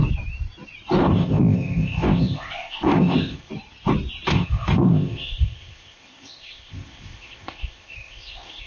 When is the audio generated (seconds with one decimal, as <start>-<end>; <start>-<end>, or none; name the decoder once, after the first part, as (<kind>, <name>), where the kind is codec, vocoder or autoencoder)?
1.0-3.5 (codec, ZipCodec); 4.3-8.7